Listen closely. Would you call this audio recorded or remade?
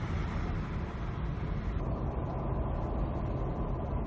recorded